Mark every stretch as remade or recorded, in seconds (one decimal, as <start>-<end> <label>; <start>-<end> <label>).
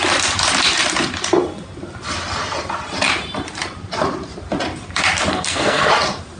0.0-5.3 recorded; 5.3-5.9 remade; 5.9-6.4 recorded